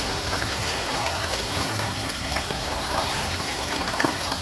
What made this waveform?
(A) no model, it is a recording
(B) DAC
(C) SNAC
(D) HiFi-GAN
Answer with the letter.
C